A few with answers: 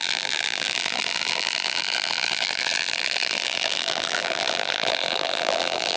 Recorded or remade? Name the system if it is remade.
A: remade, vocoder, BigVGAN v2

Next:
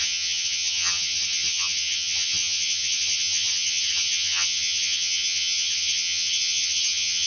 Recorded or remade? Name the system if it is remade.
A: remade, vocoder, HiFi-GAN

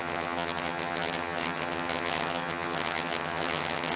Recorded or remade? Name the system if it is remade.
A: remade, vocoder, HiFi-GAN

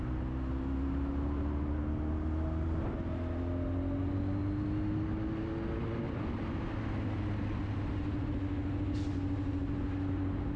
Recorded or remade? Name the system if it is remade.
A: recorded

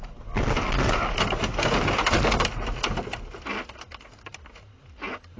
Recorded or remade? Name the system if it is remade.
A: recorded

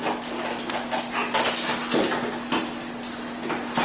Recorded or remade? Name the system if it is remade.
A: recorded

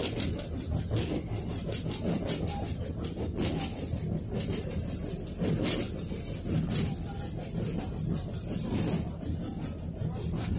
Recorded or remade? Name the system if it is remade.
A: recorded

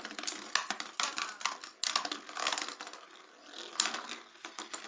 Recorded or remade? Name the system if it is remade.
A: recorded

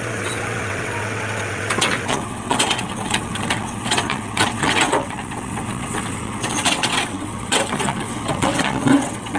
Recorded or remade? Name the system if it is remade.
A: remade, vocoder, WaveNeXt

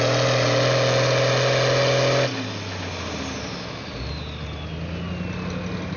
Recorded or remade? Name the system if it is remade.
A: recorded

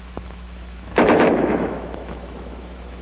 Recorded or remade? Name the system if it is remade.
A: remade, autoencoder, DAC-VAE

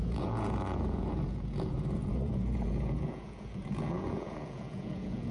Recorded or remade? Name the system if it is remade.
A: remade, vocoder, Vocos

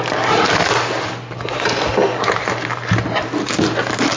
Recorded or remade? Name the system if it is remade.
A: recorded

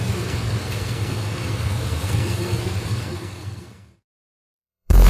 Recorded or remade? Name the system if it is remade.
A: remade, codec, SNAC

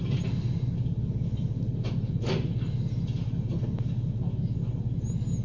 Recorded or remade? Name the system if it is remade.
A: recorded